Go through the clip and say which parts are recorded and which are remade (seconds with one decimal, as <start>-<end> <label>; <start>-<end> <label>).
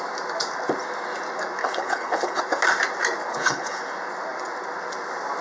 0.0-1.6 recorded; 1.6-2.4 remade; 2.4-3.3 recorded; 3.3-3.8 remade; 3.8-5.4 recorded